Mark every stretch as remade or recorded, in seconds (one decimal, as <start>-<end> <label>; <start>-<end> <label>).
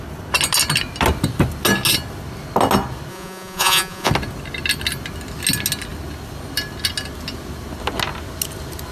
0.0-3.1 recorded; 3.1-4.1 remade; 4.1-8.9 recorded